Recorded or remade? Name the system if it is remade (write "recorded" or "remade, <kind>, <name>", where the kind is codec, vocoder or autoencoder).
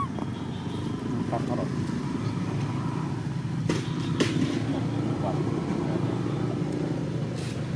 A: recorded